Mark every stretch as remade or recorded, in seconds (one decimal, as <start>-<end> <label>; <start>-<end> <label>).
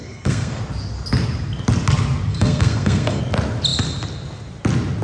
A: 0.0-0.6 remade; 0.6-2.3 recorded; 2.3-3.2 remade; 3.2-5.0 recorded